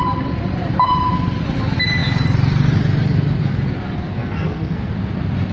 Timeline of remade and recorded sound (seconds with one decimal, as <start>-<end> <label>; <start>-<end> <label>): 0.0-4.2 recorded; 4.2-4.9 remade; 4.9-5.5 recorded